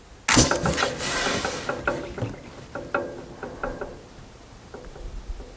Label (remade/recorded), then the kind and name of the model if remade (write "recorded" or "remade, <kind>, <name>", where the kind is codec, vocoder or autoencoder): recorded